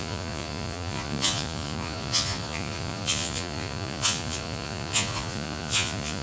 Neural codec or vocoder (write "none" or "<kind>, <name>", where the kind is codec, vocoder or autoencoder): vocoder, Vocos